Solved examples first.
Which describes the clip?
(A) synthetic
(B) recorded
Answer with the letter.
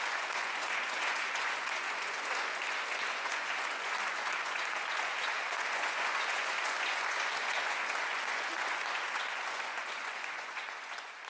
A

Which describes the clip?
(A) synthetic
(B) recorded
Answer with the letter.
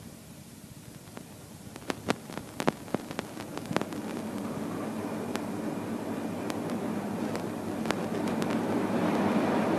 B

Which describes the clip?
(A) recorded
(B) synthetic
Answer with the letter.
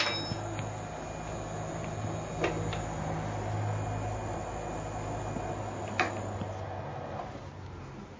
A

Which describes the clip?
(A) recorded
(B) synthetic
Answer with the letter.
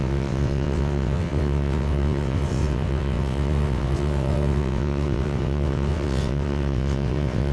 B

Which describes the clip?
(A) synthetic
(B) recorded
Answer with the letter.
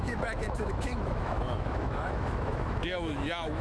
A